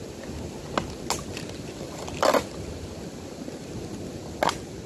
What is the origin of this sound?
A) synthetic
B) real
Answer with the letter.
B